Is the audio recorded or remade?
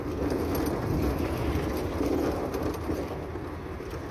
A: recorded